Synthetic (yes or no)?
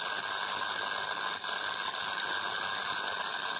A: no